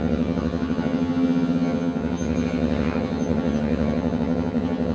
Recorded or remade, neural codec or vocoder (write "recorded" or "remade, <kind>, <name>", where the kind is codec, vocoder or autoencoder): remade, vocoder, HiFi-GAN